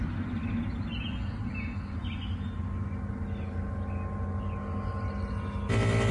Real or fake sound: real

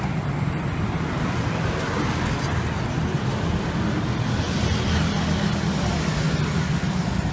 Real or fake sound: real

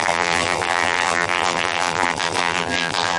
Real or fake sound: fake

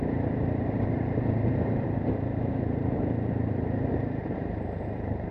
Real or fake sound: fake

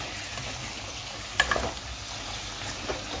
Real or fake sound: real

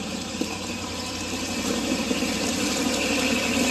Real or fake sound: fake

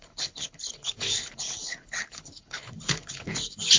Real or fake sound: fake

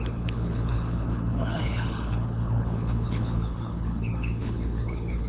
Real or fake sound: fake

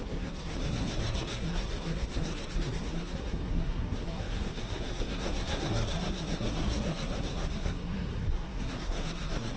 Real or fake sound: fake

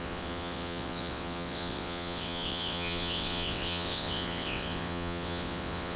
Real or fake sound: fake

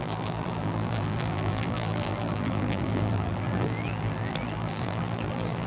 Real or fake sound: fake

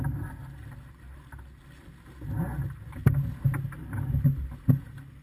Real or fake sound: real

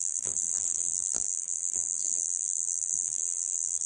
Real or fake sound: fake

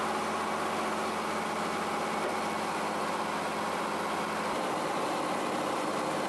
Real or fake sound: real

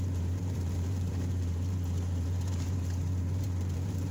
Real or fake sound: fake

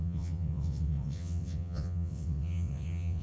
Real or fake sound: fake